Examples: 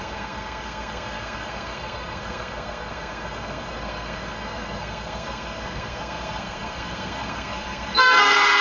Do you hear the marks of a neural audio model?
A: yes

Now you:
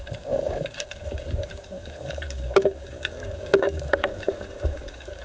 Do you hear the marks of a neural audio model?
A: yes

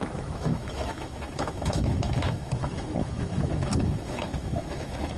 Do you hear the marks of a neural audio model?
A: yes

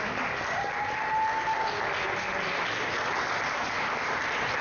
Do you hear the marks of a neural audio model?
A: no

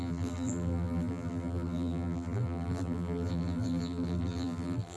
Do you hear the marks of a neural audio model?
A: yes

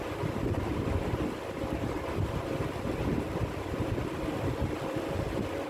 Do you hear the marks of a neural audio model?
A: no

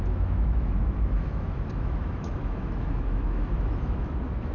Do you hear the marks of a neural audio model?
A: yes